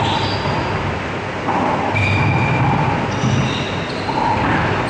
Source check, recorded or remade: recorded